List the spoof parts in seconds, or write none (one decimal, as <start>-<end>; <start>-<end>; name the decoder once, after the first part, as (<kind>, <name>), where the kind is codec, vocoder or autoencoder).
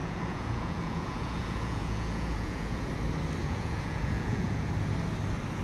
0.0-2.9 (vocoder, Vocos); 3.4-4.7